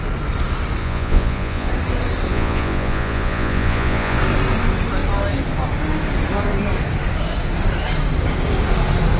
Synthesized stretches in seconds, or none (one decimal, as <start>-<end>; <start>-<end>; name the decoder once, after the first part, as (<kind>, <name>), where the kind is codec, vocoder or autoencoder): 0.8-1.7 (vocoder, Vocos); 2.3-4.2